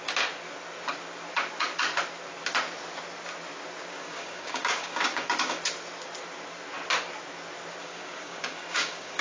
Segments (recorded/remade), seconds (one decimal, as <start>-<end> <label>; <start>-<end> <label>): 0.0-3.9 recorded; 3.9-5.6 remade; 5.6-7.8 recorded; 7.8-9.2 remade